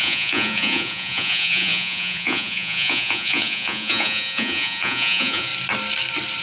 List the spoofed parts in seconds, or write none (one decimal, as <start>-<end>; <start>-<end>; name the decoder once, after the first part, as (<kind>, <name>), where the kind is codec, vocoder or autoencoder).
0.0-5.5 (vocoder, Vocos)

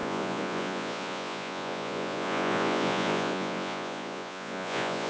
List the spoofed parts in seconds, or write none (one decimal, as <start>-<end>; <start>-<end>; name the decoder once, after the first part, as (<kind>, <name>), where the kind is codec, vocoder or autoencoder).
0.0-5.1 (vocoder, Vocos)

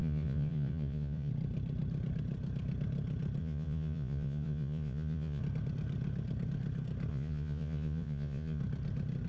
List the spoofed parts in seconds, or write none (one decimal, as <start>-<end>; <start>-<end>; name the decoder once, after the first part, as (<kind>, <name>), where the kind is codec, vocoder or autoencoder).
0.0-1.3 (vocoder, Vocos); 3.4-5.4; 7.1-8.6

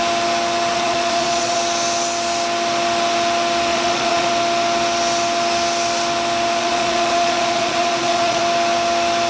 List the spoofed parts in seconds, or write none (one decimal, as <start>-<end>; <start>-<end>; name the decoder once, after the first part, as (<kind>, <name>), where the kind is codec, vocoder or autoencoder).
0.7-1.6 (vocoder, Vocos); 3.7-4.3; 6.6-8.4

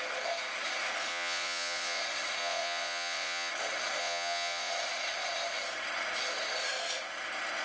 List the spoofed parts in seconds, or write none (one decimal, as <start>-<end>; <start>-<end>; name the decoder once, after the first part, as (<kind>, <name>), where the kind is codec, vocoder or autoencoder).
1.1-2.0 (vocoder, Vocos); 2.4-3.5; 4.0-4.7